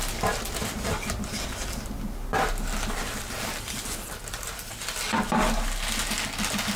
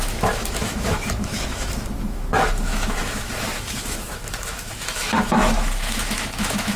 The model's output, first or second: second